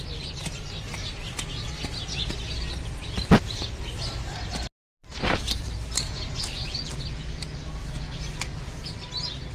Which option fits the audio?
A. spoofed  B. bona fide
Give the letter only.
B